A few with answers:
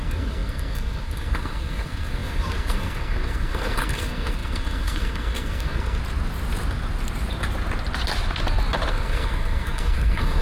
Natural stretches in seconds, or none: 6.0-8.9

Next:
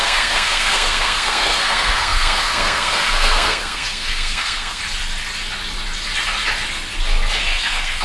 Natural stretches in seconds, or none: 4.8-7.4